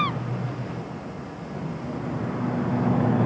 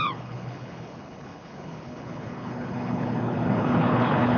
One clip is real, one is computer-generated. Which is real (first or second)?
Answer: first